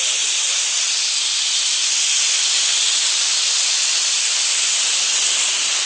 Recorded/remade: recorded